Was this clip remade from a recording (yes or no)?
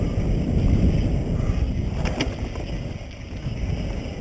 no